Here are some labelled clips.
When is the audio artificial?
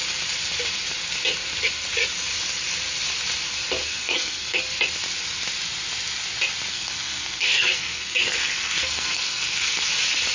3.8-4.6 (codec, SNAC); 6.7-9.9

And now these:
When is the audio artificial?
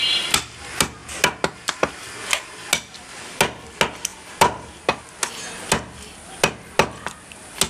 none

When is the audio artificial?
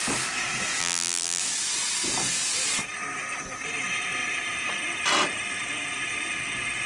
0.8-1.4 (vocoder, BigVGAN v2)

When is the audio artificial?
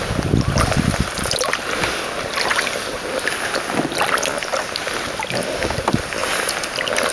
none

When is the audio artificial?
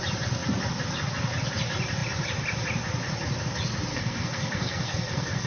3.9-5.5 (codec, SNAC)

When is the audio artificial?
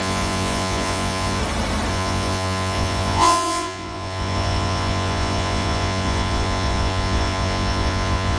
0.0-1.4 (vocoder, Vocos); 1.9-8.4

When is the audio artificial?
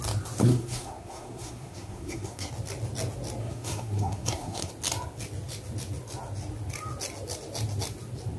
0.4-2.5 (codec, SNAC); 3.4-4.7